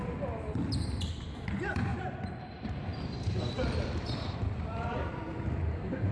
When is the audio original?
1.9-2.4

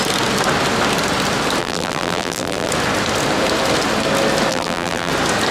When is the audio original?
0.0-1.6; 2.7-4.5; 5.1-5.5